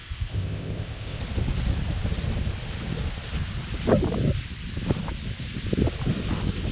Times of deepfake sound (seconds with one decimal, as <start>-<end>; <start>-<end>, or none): 0.0-1.2